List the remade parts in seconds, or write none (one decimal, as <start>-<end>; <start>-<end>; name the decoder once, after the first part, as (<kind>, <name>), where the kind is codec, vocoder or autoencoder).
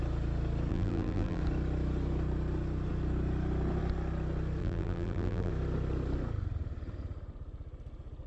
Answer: 0.7-1.4 (vocoder, BigVGAN v2); 4.6-5.5